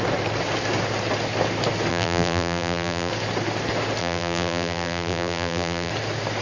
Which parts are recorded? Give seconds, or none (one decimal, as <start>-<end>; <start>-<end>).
0.0-1.9; 3.1-4.0; 5.9-6.4